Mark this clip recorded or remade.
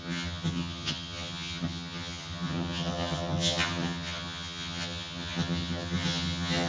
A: remade